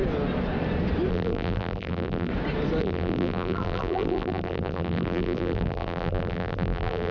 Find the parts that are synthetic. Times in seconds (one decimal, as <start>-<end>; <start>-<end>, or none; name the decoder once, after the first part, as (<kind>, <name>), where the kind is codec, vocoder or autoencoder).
1.1-2.3 (vocoder, BigVGAN v2); 2.8-7.1